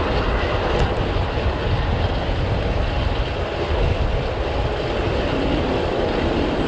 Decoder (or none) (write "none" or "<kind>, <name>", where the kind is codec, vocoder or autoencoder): none